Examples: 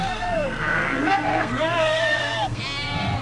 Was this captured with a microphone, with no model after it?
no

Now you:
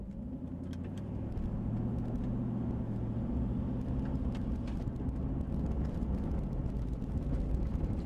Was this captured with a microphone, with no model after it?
yes